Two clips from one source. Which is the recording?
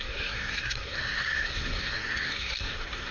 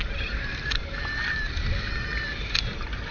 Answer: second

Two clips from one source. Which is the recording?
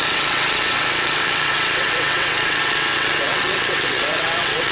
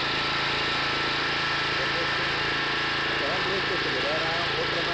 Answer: second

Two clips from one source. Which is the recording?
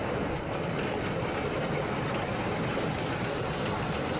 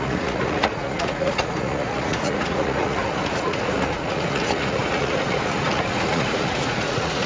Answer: first